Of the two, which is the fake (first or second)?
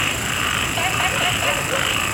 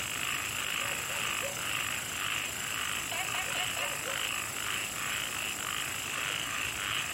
first